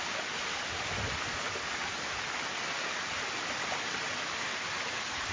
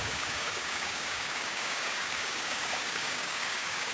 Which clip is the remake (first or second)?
second